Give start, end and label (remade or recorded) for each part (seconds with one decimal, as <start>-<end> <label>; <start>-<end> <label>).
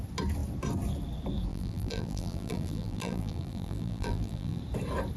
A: 0.0-1.5 recorded; 1.5-4.6 remade; 4.6-5.2 recorded